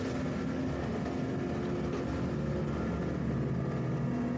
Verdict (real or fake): real